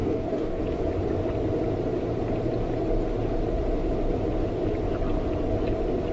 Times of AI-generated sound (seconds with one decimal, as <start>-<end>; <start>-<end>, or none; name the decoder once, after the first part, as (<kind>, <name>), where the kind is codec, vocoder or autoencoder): 0.0-0.6 (codec, DAC)